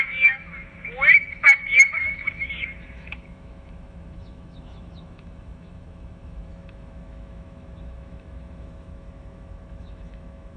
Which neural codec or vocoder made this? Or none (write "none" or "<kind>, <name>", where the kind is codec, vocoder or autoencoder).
autoencoder, DAC-VAE